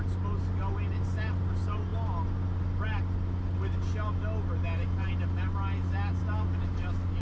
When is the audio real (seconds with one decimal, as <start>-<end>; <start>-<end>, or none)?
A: 0.0-7.2